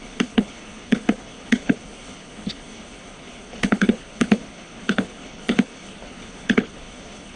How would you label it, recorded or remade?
remade